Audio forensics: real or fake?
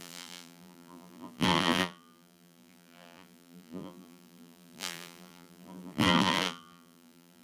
fake